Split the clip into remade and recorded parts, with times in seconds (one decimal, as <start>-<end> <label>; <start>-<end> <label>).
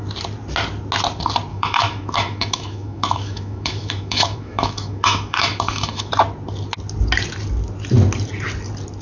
0.0-1.5 recorded; 1.5-6.1 remade; 6.1-9.0 recorded